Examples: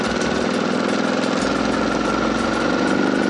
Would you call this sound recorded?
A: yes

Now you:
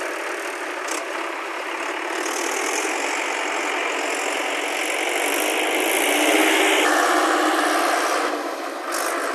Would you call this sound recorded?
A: yes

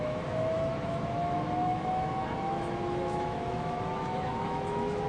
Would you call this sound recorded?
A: no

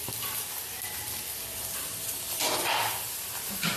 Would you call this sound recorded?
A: yes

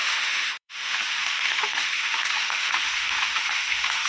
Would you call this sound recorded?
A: no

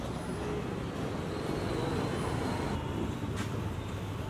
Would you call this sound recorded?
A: yes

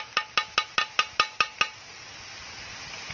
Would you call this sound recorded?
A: yes